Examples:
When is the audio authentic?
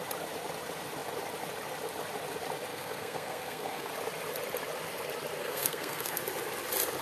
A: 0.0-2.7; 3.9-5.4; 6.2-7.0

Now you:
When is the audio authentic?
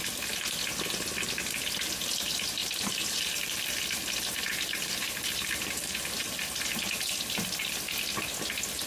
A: 0.0-2.6; 3.7-4.5; 6.4-8.9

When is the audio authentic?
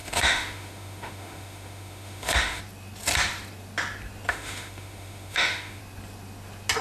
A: 2.6-4.3; 5.8-6.8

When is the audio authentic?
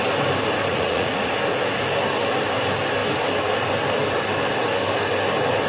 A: 0.0-0.7; 1.3-5.7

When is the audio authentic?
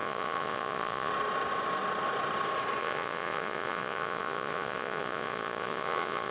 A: 1.1-2.8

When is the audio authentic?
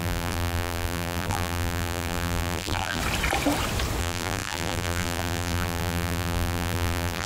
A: 3.0-4.0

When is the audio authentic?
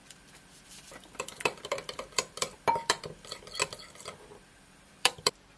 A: 3.4-4.5